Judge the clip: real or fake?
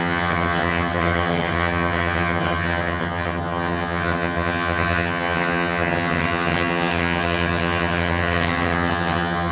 fake